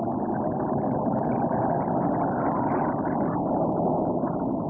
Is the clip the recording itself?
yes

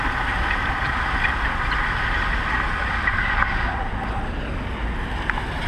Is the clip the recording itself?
yes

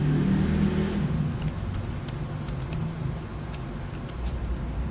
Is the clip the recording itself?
yes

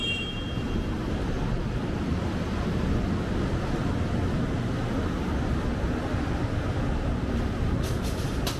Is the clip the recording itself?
yes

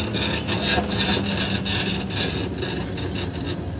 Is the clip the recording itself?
yes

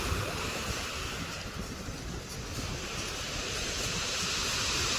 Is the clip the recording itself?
yes